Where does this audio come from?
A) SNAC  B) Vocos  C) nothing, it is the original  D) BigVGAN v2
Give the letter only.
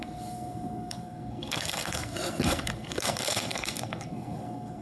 A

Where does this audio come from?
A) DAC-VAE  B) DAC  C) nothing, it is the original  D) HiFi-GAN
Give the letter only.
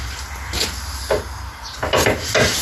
C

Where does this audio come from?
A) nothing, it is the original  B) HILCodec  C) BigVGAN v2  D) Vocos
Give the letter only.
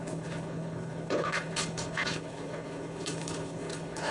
B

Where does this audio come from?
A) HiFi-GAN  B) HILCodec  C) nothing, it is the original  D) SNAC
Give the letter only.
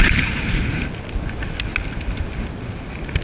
C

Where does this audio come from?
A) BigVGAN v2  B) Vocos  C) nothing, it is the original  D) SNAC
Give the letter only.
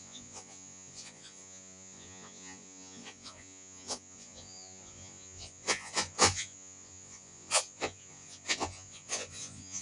B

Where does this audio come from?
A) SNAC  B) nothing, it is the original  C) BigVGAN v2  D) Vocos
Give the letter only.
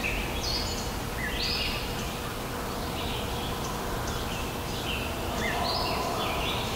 B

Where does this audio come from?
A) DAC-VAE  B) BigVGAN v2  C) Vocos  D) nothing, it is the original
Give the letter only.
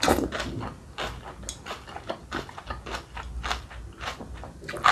D